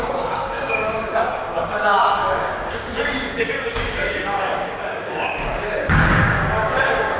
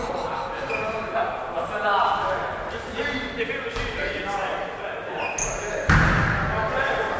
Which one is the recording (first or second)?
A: second